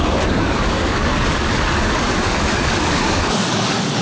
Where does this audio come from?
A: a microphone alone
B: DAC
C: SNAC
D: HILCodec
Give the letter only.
B